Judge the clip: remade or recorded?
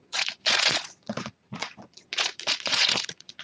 remade